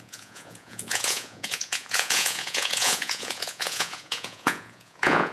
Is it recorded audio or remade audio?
remade